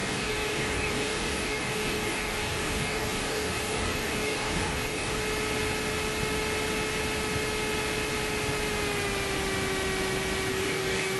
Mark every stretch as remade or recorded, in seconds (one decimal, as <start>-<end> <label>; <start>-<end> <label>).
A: 0.0-5.2 remade; 5.2-10.5 recorded; 10.5-11.2 remade